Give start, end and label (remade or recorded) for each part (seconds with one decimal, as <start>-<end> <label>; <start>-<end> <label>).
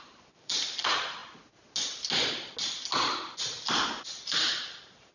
0.0-1.2 remade; 1.2-4.3 recorded; 4.3-5.1 remade